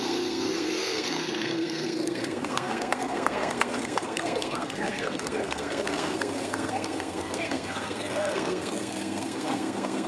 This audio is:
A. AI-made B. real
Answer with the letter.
A